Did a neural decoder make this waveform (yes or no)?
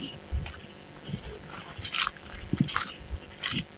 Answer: no